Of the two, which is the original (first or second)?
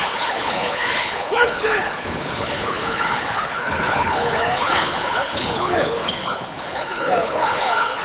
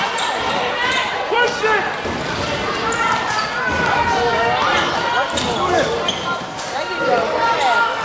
second